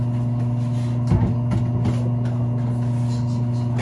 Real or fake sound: real